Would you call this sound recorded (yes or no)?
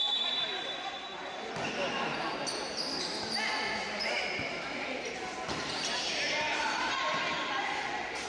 no